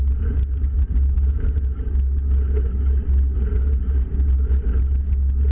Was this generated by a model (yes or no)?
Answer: no